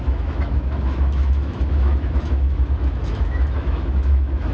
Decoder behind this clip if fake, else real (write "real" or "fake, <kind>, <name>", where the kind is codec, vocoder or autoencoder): fake, autoencoder, DAC-VAE